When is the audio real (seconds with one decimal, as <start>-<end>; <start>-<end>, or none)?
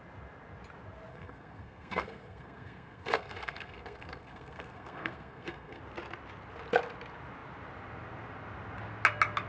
0.0-1.1; 5.8-9.5